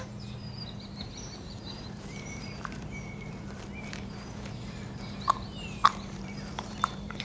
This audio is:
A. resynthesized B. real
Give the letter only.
A